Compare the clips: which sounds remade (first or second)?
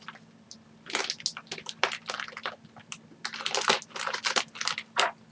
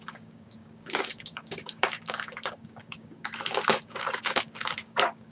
second